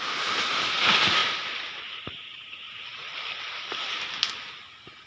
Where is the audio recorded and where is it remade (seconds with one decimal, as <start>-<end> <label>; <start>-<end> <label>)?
0.0-1.2 recorded; 1.2-4.3 remade; 4.3-5.1 recorded